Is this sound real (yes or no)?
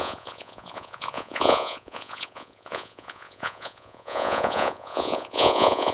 no